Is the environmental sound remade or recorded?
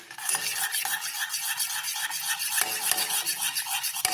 recorded